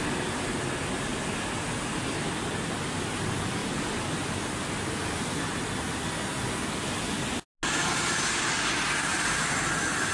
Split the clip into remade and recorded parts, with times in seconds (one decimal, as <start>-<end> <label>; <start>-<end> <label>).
0.0-1.1 recorded; 1.1-3.2 remade; 3.2-3.6 recorded; 3.6-4.5 remade; 4.5-9.1 recorded; 9.1-10.1 remade